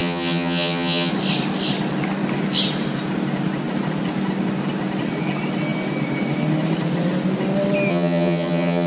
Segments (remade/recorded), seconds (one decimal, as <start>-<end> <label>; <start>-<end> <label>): 0.0-1.1 remade; 1.1-7.9 recorded; 7.9-8.9 remade